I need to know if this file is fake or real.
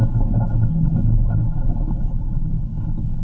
fake